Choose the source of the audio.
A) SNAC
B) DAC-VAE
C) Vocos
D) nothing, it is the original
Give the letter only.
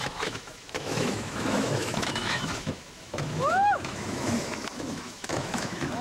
B